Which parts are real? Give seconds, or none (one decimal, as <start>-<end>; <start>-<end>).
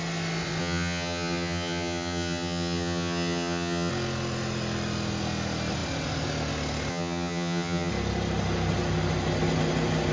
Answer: 0.0-0.6; 3.9-6.9; 7.9-10.1